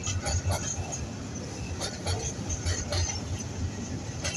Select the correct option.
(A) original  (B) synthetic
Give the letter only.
A